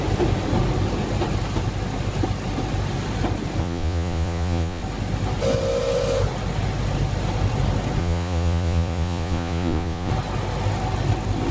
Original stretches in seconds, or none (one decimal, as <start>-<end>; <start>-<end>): 0.0-3.6; 4.8-8.0; 10.1-11.5